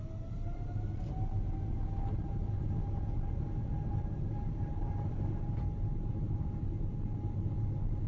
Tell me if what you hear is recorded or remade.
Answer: recorded